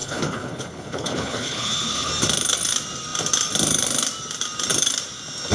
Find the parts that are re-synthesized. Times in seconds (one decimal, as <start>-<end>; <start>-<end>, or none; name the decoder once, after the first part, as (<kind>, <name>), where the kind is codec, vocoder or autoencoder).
0.0-2.1 (codec, HILCodec)